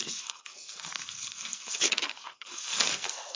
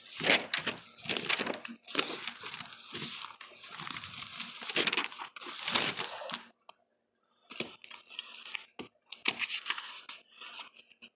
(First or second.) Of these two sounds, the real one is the second